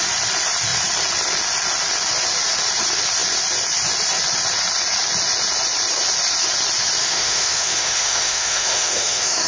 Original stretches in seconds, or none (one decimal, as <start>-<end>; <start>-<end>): 0.0-7.0

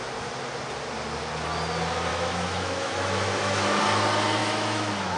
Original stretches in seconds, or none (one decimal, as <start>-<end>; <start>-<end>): 0.0-2.1; 3.8-4.4

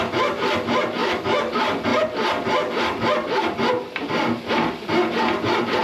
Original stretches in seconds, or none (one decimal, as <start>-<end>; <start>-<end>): 0.0-1.0; 1.5-5.8

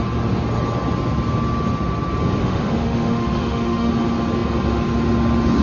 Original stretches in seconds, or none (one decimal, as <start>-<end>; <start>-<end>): 0.0-2.4; 3.9-5.6

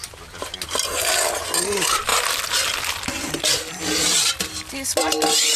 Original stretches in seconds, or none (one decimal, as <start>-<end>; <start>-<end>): 0.0-5.6

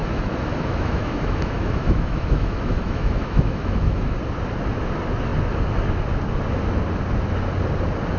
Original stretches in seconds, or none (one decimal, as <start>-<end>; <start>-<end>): 4.2-8.2

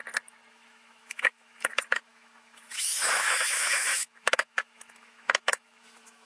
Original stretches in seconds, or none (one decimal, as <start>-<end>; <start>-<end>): 0.0-0.5